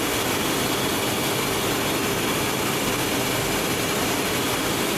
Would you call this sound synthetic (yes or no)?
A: no